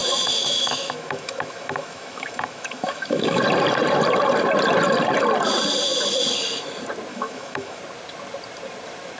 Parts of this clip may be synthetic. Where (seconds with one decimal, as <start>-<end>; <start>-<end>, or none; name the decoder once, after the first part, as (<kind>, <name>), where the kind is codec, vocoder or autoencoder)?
0.0-3.4 (autoencoder, DAC-VAE); 7.1-7.8